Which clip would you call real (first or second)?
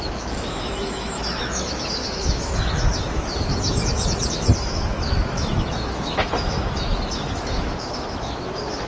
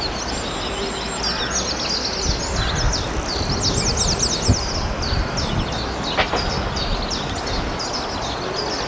second